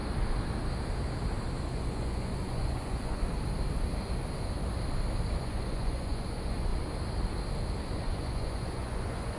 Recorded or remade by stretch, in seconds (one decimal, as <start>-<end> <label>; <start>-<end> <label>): 0.0-1.7 recorded; 1.7-3.2 remade; 3.2-5.4 recorded; 5.4-6.7 remade; 6.7-7.9 recorded; 7.9-9.4 remade